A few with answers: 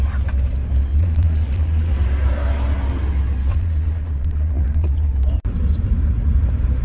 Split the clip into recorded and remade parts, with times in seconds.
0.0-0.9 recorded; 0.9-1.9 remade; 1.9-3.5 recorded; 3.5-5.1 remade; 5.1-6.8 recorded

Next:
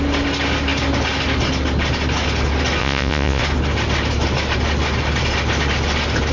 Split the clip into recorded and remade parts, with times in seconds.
0.0-2.8 recorded; 2.8-3.4 remade; 3.4-6.3 recorded

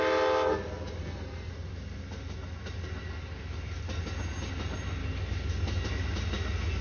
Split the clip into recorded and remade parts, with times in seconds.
0.0-1.0 recorded; 1.0-1.5 remade; 1.5-6.8 recorded

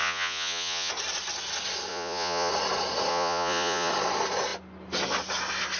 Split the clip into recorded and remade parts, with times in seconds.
0.0-0.9 remade; 0.9-1.9 recorded; 1.9-2.5 remade; 2.5-3.1 recorded; 3.1-3.9 remade; 3.9-5.8 recorded

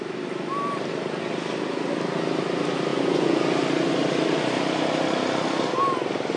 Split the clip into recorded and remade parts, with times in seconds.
0.0-2.9 recorded; 2.9-3.4 remade; 3.4-6.4 recorded

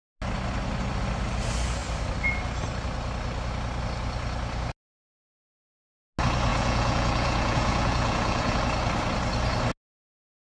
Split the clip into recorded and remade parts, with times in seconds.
0.0-6.5 recorded; 6.5-8.6 remade; 8.6-10.5 recorded

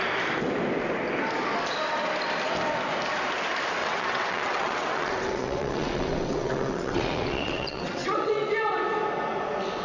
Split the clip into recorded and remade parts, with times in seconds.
0.0-3.8 recorded; 3.8-8.5 remade; 8.5-9.8 recorded

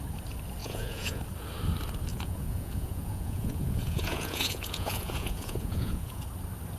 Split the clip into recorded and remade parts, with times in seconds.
0.0-0.6 recorded; 0.6-1.2 remade; 1.2-2.1 recorded; 2.1-6.2 remade; 6.2-6.8 recorded